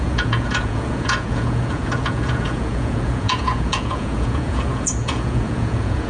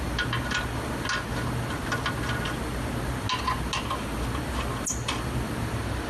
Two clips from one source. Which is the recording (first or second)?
second